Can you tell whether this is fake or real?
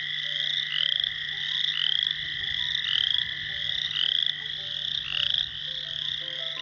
real